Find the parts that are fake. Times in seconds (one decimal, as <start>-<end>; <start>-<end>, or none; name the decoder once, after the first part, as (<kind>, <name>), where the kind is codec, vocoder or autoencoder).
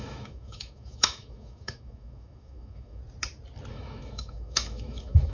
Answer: 0.0-3.0 (autoencoder, DAC-VAE); 3.7-5.3